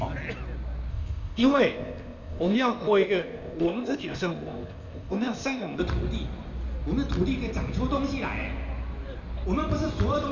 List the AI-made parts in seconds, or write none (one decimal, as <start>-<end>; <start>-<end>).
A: 0.9-5.8